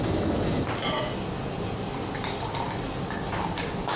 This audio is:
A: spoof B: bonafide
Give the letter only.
B